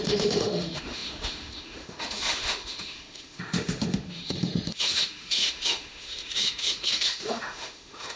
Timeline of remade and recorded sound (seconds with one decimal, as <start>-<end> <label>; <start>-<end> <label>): 0.0-8.2 remade